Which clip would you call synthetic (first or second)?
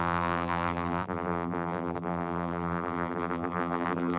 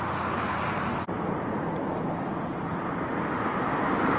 first